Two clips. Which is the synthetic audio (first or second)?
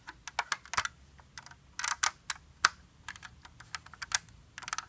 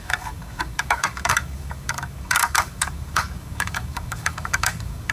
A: second